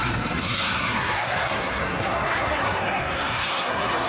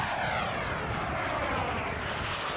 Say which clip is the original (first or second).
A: second